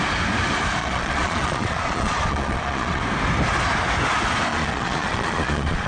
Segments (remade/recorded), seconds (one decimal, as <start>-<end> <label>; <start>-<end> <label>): 0.0-0.8 recorded; 0.8-3.0 remade; 3.0-4.5 recorded; 4.5-5.9 remade